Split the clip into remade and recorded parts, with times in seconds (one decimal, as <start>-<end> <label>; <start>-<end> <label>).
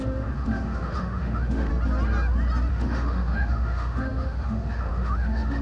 0.0-1.7 remade; 1.7-2.7 recorded; 2.7-5.6 remade